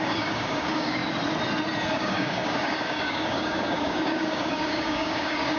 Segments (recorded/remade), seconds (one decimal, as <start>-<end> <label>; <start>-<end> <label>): 0.0-1.0 remade; 1.0-1.9 recorded; 1.9-5.6 remade